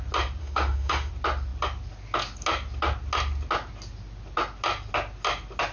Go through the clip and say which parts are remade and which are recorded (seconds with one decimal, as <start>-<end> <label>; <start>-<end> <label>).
0.0-0.4 recorded; 0.4-1.1 remade; 1.1-5.7 recorded